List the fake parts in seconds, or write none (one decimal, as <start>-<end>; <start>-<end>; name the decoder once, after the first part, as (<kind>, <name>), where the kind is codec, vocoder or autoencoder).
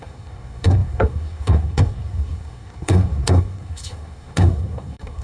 0.0-5.2 (codec, SNAC)